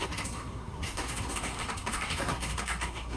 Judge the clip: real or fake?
fake